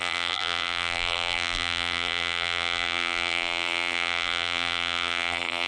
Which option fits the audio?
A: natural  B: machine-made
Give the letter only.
B